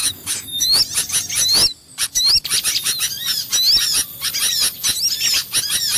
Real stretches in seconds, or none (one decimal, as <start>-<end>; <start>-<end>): 0.8-6.0